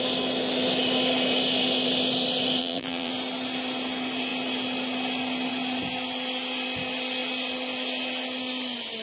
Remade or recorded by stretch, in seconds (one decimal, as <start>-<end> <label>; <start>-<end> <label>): 0.0-2.6 recorded; 2.6-3.1 remade; 3.1-9.0 recorded